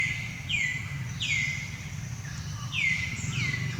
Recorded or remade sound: recorded